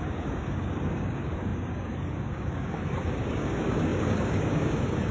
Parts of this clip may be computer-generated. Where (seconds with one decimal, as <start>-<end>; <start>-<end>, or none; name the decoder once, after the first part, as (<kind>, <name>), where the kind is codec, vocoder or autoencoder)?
0.0-5.1 (codec, DAC)